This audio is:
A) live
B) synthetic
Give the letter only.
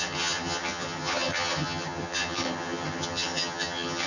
B